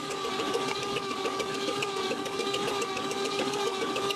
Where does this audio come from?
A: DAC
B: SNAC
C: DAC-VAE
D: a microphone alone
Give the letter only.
A